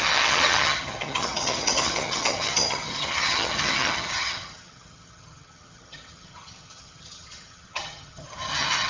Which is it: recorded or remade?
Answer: remade